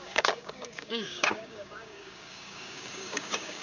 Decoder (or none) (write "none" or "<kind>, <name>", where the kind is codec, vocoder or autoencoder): codec, DAC